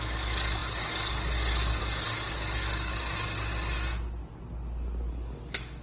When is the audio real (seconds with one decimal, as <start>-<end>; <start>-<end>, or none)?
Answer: 2.9-5.1

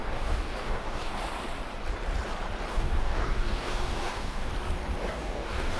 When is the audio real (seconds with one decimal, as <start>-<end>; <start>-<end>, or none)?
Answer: 1.1-2.7; 4.5-5.1

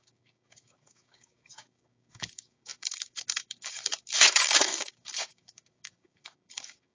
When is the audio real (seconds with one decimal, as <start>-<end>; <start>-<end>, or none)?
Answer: none

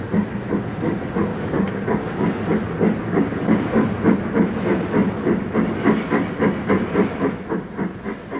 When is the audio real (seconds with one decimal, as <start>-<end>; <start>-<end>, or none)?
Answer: 0.0-1.3; 2.4-3.0; 3.7-8.4